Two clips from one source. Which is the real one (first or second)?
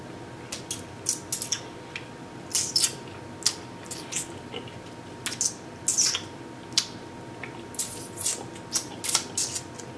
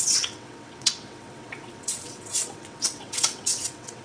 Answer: first